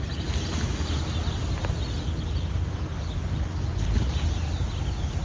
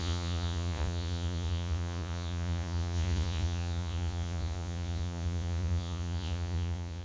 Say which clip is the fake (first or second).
second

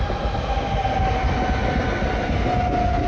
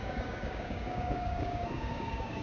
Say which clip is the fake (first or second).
second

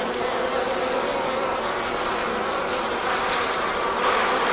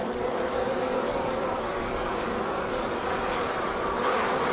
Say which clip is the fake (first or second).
second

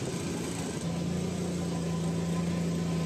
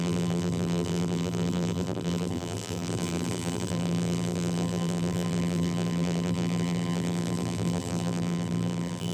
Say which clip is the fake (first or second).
second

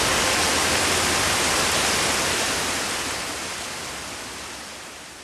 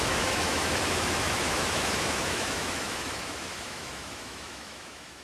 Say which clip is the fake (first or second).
second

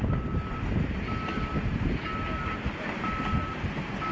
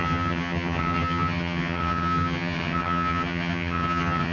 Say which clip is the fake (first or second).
second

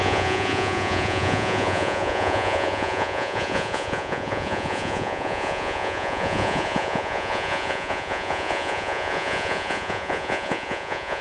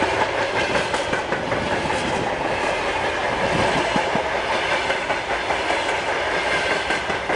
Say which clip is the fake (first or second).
first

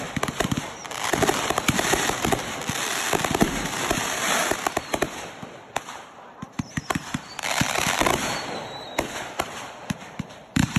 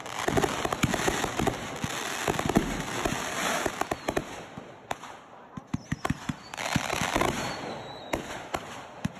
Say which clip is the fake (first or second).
first